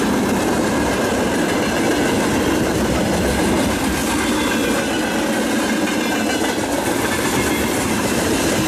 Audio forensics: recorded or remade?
recorded